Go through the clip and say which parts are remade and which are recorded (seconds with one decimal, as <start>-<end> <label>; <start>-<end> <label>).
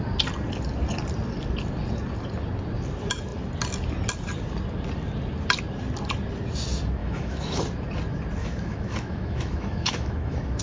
0.0-7.0 recorded; 7.0-7.6 remade; 7.6-8.4 recorded; 8.4-10.6 remade